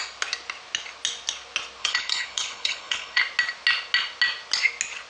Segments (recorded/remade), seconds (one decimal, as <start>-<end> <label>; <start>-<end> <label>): 0.0-1.8 recorded; 1.8-3.2 remade; 3.2-5.1 recorded